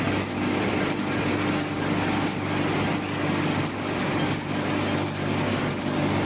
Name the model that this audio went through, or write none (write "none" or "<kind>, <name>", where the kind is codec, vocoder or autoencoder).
none